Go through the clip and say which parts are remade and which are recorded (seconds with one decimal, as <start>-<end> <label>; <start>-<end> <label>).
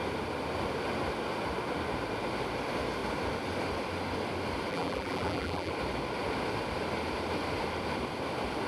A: 0.0-4.7 recorded; 4.7-5.7 remade; 5.7-8.7 recorded